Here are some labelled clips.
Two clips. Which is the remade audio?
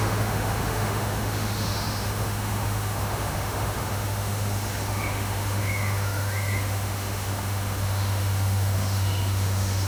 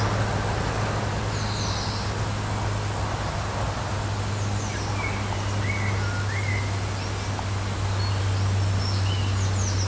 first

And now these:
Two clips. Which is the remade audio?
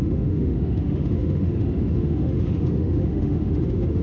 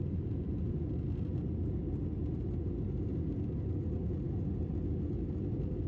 first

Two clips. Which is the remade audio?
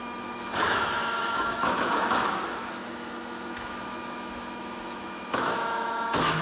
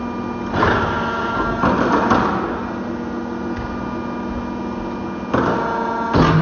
first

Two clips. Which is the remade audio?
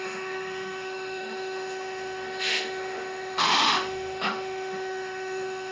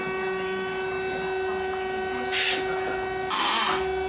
first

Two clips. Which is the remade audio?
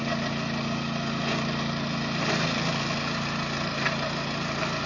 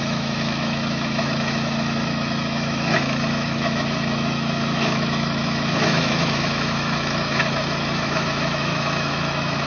second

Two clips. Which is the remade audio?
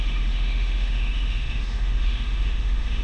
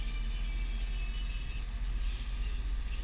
first